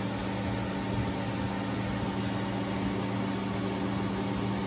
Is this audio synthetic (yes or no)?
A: no